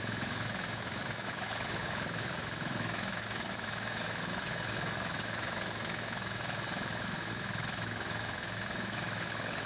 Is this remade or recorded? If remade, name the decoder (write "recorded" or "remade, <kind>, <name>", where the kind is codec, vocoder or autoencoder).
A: remade, autoencoder, DAC-VAE